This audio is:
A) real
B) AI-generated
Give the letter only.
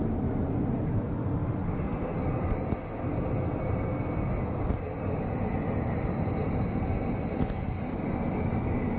A